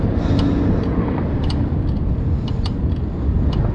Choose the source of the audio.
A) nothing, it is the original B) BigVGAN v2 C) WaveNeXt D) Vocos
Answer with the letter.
A